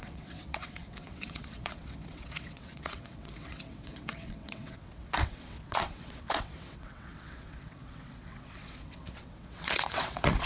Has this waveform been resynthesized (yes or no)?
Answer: yes